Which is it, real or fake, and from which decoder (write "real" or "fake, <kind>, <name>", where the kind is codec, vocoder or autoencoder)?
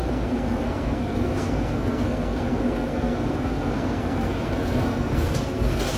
fake, codec, SNAC